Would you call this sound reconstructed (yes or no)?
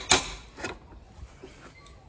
no